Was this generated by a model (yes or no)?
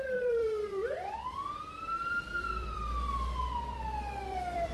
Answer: yes